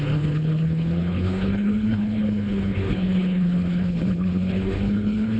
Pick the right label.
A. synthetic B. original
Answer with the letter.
A